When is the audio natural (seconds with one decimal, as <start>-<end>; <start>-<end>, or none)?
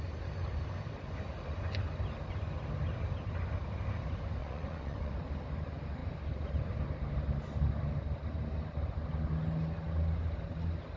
0.0-4.4; 5.1-11.0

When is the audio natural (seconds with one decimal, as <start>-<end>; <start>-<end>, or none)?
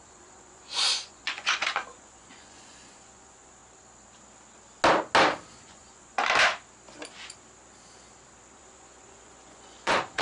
3.6-5.5; 6.2-8.6